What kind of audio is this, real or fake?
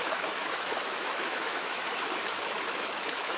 fake